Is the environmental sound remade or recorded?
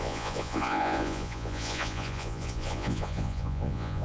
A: remade